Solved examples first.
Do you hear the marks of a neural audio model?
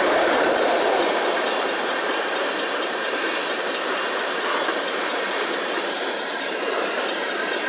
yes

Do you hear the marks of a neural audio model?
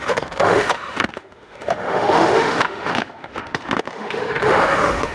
yes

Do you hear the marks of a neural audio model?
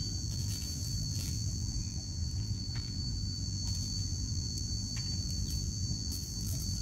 yes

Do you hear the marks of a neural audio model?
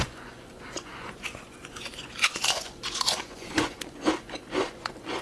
yes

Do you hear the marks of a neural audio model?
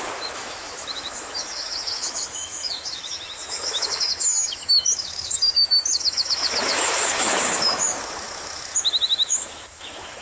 yes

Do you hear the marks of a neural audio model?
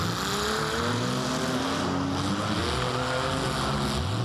no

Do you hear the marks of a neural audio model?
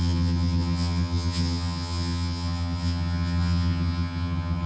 yes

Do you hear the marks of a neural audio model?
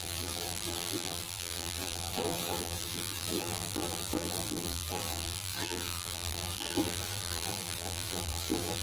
yes